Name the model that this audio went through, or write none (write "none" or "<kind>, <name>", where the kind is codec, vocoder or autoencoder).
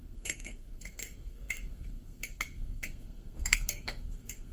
codec, SNAC